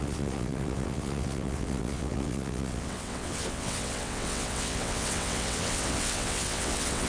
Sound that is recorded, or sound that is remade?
remade